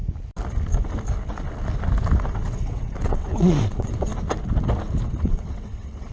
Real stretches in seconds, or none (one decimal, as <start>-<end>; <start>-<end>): 0.0-2.3; 4.1-5.0